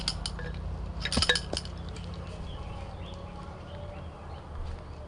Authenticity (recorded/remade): recorded